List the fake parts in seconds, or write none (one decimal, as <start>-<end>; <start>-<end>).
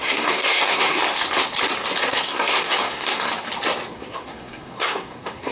0.0-1.0; 2.0-3.3; 3.9-5.5